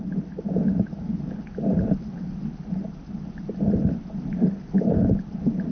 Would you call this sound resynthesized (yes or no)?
no